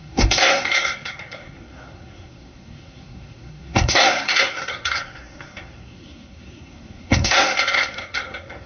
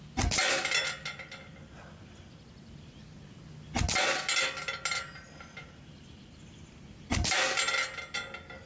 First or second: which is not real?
first